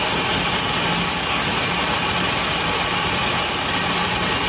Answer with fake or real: real